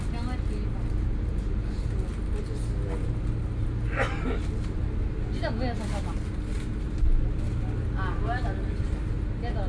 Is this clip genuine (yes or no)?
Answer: yes